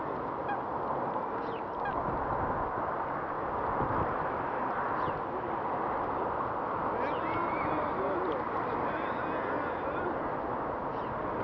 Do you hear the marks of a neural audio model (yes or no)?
no